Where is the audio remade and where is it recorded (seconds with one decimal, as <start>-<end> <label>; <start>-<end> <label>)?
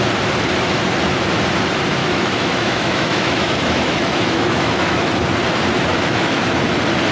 0.0-2.0 recorded; 2.0-5.1 remade; 5.1-5.9 recorded; 5.9-6.5 remade; 6.5-7.1 recorded